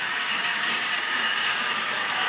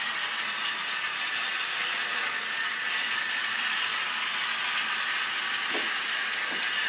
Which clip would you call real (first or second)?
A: second